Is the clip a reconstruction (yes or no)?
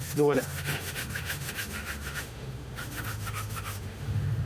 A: yes